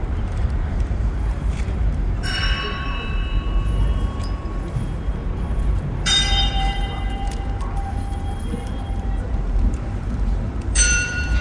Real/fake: fake